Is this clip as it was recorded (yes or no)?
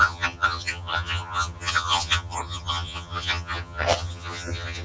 no